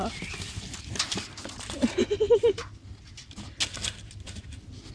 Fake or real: real